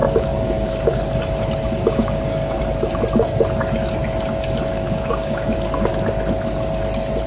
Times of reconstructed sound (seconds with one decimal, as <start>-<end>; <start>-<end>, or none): 0.0-1.0; 1.6-2.6; 4.7-5.9